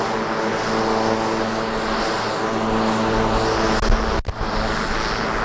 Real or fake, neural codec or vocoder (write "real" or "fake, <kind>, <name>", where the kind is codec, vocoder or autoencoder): real